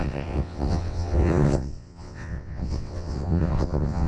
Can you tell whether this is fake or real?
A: fake